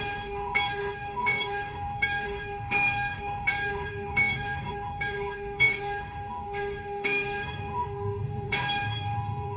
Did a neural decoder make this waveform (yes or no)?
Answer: yes